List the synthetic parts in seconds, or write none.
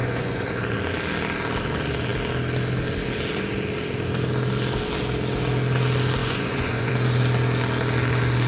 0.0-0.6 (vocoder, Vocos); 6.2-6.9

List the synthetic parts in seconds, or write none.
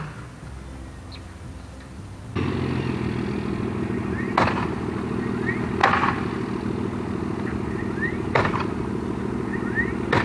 none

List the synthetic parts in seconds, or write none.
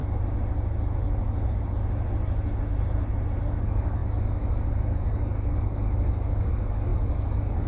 3.6-7.7 (codec, DAC)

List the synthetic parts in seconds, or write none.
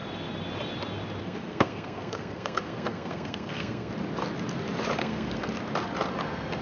1.2-3.9 (codec, SNAC); 5.0-5.5